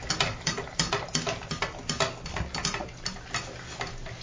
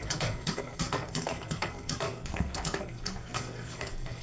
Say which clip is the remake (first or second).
second